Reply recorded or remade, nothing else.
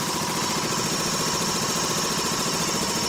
recorded